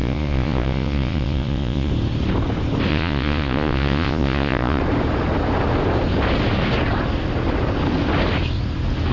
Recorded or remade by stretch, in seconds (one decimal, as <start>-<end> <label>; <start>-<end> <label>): 0.0-1.9 remade; 1.9-2.9 recorded; 2.9-4.8 remade; 4.8-9.1 recorded